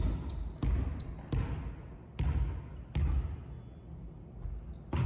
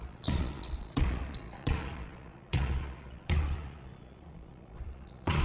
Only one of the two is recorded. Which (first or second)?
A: first